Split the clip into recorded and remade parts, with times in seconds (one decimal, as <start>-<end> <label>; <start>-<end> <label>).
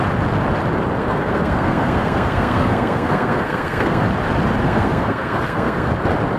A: 0.0-1.0 recorded; 1.0-4.0 remade; 4.0-4.6 recorded; 4.6-5.9 remade; 5.9-6.4 recorded